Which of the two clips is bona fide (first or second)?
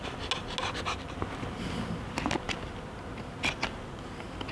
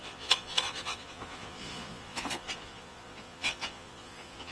first